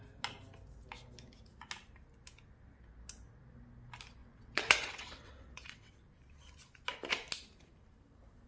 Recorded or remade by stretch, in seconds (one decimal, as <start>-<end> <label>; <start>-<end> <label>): 0.0-4.2 recorded; 4.2-6.0 remade; 6.0-8.5 recorded